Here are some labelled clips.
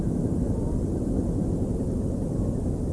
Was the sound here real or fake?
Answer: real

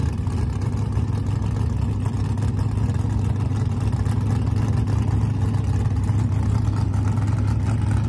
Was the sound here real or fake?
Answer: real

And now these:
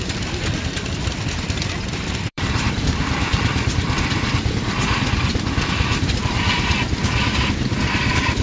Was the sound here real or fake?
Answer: fake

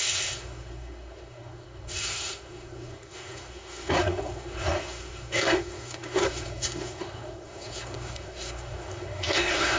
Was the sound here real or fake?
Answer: fake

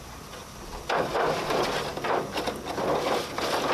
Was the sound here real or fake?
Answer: real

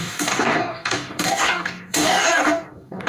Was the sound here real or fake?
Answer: fake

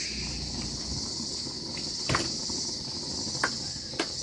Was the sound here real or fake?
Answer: real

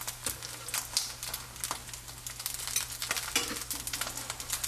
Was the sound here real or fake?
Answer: real